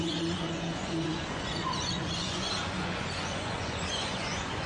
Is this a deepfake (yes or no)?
yes